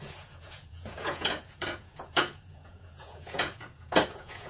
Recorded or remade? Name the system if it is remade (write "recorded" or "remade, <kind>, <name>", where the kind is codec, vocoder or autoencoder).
remade, vocoder, Vocos